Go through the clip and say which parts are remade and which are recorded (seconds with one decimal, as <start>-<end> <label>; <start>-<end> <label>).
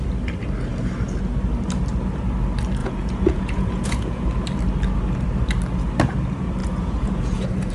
0.0-2.8 recorded; 2.8-4.3 remade; 4.3-6.6 recorded; 6.6-7.7 remade